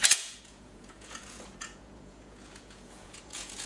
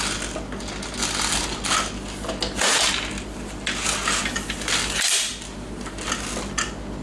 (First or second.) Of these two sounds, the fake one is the first